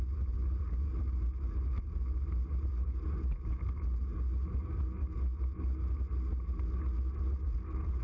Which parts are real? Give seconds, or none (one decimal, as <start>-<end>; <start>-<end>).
0.0-8.0